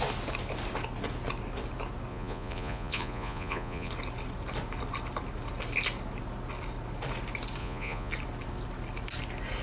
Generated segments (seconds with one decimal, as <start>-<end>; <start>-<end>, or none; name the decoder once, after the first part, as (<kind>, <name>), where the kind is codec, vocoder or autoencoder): 2.1-3.9 (vocoder, Vocos); 7.6-8.1

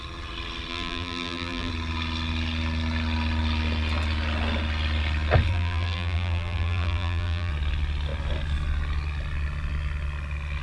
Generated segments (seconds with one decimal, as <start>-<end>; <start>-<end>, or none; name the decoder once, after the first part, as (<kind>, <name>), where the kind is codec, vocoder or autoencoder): 0.7-1.7 (vocoder, BigVGAN v2); 5.5-7.5